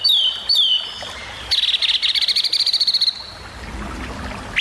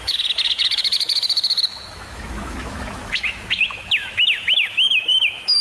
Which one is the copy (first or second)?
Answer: second